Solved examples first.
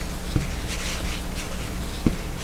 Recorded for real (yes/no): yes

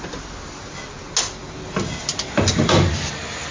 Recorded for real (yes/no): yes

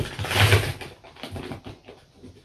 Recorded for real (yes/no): yes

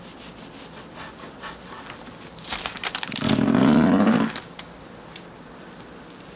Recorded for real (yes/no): yes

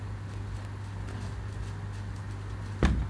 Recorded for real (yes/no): yes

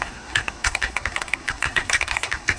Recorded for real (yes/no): no